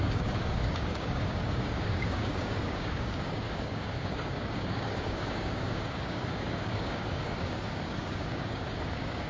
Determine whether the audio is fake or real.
fake